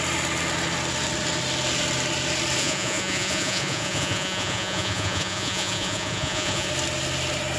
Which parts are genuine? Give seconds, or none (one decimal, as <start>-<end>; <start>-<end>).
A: 0.0-2.6; 6.7-7.6